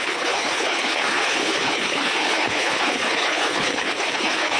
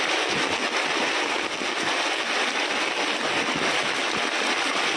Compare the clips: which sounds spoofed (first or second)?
first